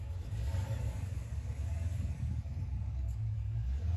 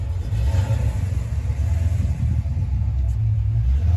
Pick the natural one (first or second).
second